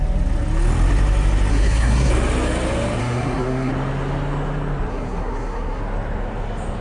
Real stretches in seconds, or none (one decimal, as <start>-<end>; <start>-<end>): 0.0-1.5; 2.1-3.0; 3.7-4.9; 5.8-6.8